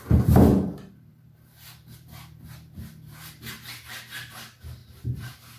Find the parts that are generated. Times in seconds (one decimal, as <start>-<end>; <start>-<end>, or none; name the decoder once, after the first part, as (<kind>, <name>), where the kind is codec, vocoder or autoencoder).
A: 0.5-3.9 (vocoder, BigVGAN v2); 4.8-5.6

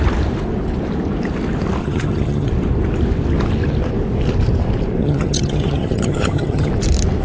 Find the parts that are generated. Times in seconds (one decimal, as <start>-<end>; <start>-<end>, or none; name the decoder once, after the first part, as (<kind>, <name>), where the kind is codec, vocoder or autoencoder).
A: 1.8-2.5 (vocoder, HiFi-GAN); 5.0-6.7

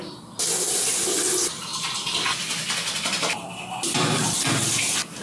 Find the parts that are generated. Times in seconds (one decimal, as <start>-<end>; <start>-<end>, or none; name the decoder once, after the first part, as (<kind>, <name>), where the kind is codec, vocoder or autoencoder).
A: 1.7-4.8 (vocoder, BigVGAN v2)

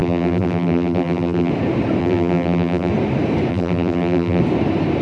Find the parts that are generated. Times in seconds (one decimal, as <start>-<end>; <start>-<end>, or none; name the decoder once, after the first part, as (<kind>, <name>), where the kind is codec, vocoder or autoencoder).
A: 0.0-1.5 (vocoder, BigVGAN v2); 2.0-2.9; 3.5-4.4